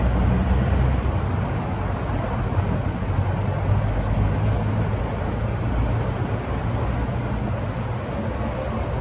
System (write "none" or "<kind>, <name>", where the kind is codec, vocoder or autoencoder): none